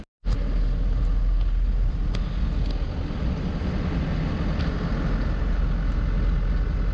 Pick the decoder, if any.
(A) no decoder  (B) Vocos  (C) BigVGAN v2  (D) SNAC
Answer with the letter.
A